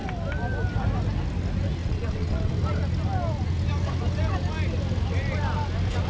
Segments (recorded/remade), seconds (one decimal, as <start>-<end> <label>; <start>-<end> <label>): 0.0-1.8 recorded; 1.8-2.5 remade; 2.5-6.1 recorded